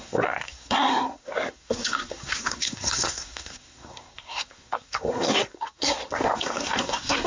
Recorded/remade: remade